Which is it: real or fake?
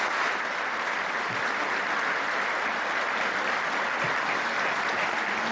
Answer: real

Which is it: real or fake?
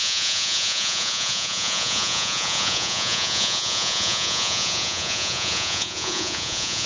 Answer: fake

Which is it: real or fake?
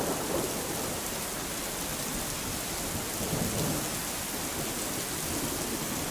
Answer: real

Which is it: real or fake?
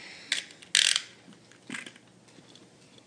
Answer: real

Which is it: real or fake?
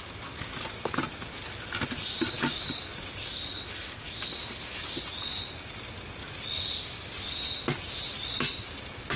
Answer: real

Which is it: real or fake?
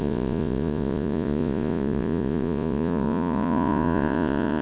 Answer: fake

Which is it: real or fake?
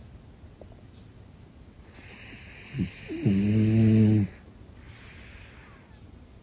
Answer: real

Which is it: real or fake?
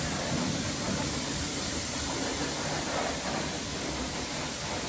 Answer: fake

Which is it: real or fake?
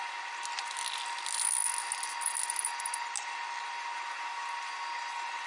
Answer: real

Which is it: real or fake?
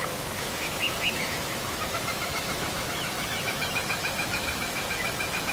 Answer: fake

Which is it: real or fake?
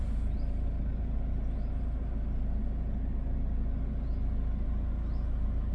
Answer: real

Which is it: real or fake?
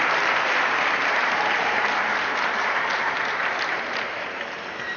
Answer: fake